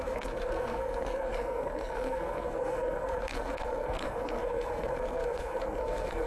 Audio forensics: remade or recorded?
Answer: remade